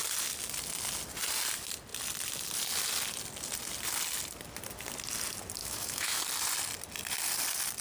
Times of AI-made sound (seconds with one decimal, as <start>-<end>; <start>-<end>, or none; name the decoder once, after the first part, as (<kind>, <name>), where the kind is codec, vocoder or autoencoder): 5.6-6.2 (autoencoder, DAC-VAE)